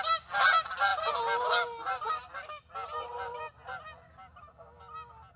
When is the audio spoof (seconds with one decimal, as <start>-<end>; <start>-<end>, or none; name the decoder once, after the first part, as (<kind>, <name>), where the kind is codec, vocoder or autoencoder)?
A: none